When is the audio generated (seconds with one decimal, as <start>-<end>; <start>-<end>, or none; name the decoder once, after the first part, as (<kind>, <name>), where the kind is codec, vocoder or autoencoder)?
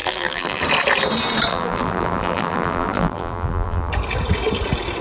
0.0-0.6 (vocoder, BigVGAN v2); 1.5-3.9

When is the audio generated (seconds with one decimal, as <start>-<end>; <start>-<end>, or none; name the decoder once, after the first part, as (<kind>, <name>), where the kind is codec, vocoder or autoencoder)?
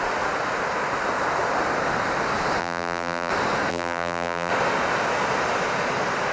2.6-3.3 (vocoder, BigVGAN v2); 3.7-4.5